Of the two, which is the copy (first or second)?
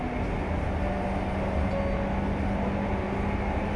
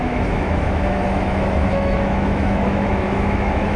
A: second